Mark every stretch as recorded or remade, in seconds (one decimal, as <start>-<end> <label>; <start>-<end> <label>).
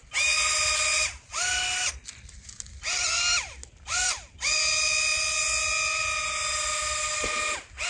0.0-7.9 recorded